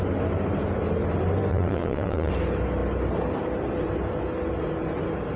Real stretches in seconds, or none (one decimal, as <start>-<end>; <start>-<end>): 0.0-1.5; 2.3-5.4